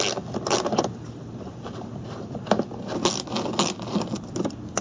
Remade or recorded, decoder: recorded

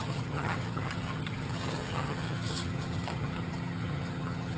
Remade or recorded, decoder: remade, vocoder, HiFi-GAN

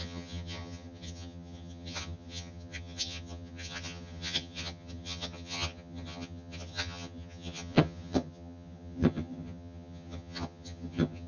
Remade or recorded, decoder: remade, vocoder, HiFi-GAN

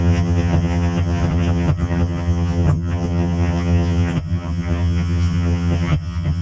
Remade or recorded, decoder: remade, vocoder, HiFi-GAN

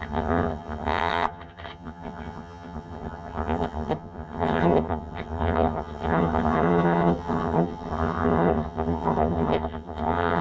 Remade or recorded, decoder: remade, vocoder, HiFi-GAN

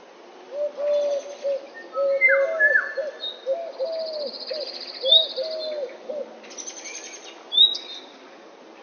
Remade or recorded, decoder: recorded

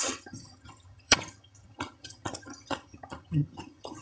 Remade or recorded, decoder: remade, vocoder, HiFi-GAN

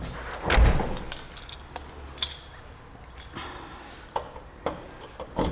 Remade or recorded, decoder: recorded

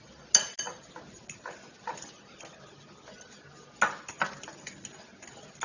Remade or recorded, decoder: recorded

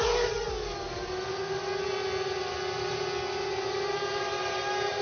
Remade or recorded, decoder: recorded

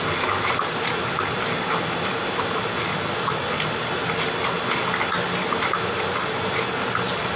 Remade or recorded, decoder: recorded